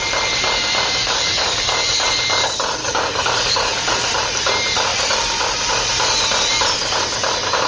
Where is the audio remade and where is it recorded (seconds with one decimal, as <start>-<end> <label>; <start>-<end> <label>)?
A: 0.0-1.0 recorded; 1.0-2.1 remade; 2.1-2.8 recorded; 2.8-3.9 remade; 3.9-7.7 recorded